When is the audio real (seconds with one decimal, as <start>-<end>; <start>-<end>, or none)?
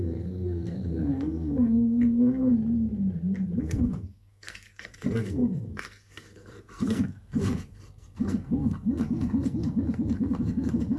2.5-3.6